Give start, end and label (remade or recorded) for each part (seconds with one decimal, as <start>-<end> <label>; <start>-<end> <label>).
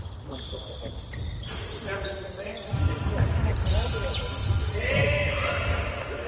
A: 0.0-6.3 recorded